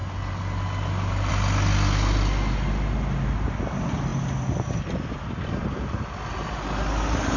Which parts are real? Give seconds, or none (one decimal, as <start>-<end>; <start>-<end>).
0.0-7.4